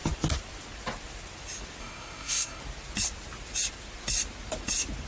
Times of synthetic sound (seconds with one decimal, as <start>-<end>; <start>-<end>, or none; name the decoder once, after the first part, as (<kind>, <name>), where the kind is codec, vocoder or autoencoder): 1.8-2.6 (codec, SNAC)